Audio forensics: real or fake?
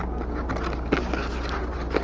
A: real